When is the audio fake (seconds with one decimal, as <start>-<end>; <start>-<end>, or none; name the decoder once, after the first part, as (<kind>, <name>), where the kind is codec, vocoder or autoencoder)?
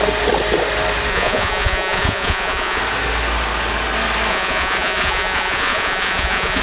1.1-2.8 (vocoder, Vocos); 4.3-6.6